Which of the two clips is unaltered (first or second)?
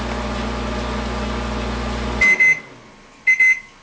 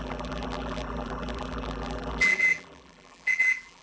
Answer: first